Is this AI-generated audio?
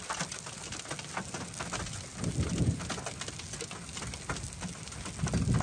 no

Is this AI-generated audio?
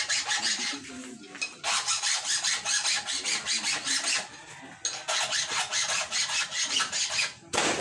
no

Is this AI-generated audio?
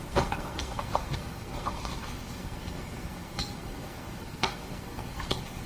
yes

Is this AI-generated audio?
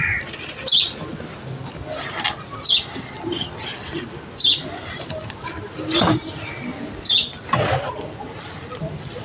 no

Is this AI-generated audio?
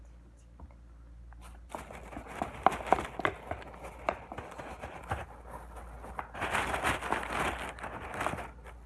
no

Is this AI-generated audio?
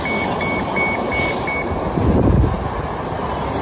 no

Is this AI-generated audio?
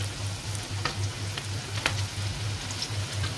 no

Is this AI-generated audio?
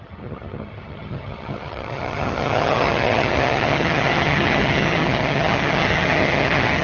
yes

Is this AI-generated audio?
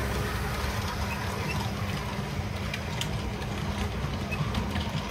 no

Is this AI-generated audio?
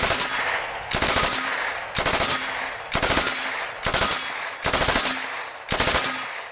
no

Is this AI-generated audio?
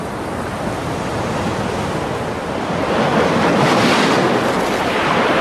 no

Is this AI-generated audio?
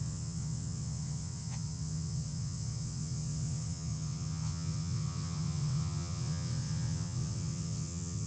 yes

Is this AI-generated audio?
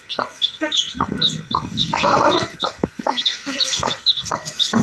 yes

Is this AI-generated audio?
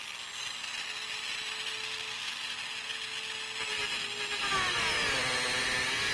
no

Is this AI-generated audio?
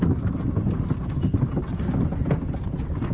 no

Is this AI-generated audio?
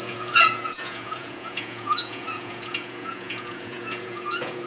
yes